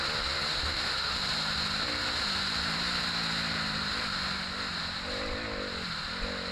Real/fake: real